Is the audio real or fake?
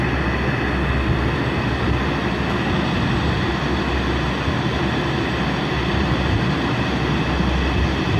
real